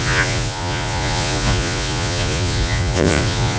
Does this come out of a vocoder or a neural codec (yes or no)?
yes